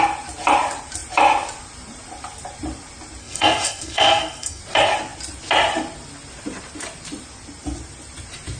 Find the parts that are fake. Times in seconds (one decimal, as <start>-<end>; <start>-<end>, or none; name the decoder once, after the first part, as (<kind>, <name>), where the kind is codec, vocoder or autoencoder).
3.2-4.6 (codec, SNAC)